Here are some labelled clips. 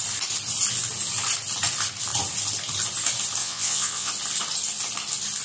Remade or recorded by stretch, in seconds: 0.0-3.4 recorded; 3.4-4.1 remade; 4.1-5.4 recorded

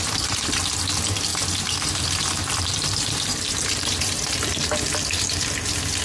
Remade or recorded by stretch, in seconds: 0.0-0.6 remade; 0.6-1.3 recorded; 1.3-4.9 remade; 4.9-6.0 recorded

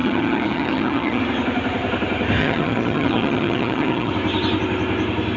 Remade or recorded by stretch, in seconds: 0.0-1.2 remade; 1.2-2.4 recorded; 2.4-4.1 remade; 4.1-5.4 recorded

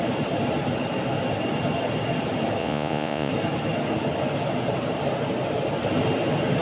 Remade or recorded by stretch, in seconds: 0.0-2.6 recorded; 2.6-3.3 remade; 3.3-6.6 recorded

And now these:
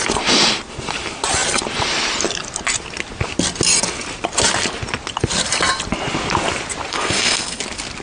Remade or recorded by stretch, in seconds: 0.0-6.9 recorded; 6.9-7.6 remade; 7.6-8.0 recorded

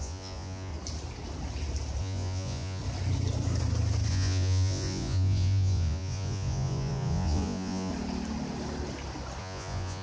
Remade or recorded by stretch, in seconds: 0.0-0.7 remade; 0.7-2.0 recorded; 2.0-2.8 remade; 2.8-4.1 recorded; 4.1-7.9 remade; 7.9-9.4 recorded; 9.4-10.0 remade